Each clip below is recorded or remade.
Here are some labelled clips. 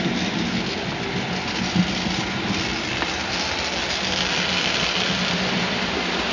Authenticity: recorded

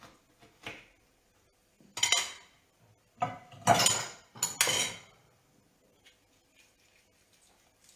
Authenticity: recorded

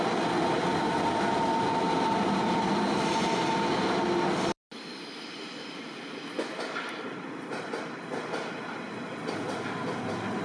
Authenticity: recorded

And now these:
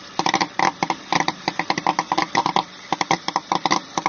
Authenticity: remade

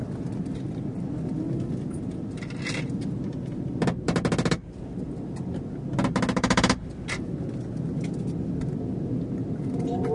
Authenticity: recorded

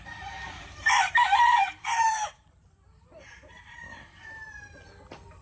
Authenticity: remade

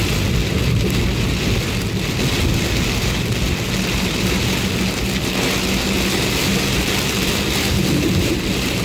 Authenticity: recorded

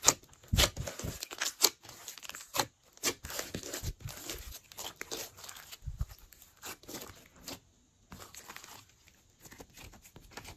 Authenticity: recorded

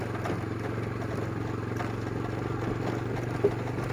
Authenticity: recorded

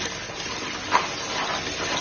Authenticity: recorded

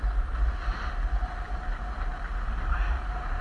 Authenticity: recorded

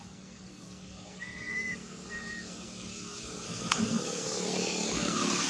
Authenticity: remade